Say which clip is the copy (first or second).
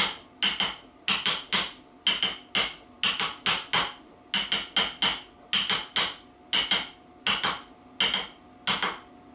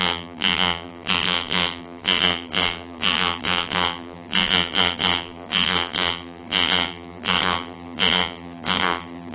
second